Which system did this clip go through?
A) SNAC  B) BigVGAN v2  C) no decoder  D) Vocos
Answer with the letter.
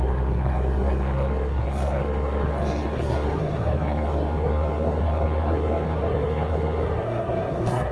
A